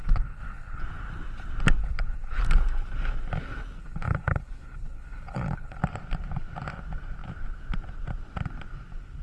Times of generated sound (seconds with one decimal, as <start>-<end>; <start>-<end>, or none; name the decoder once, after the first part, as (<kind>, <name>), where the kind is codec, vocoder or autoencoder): 0.0-0.8 (codec, HILCodec); 1.8-2.4; 3.8-5.8